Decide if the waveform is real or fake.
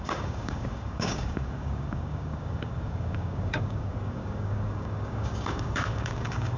fake